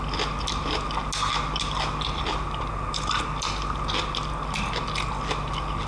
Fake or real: real